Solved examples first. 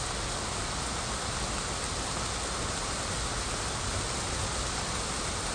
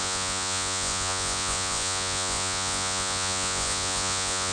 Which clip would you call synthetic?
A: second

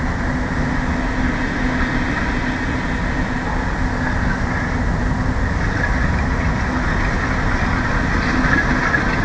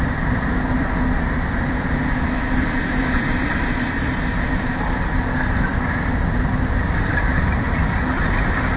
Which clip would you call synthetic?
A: second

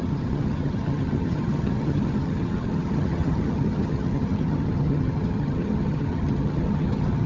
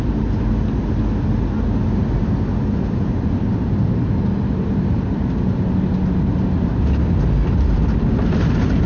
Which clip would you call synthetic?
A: first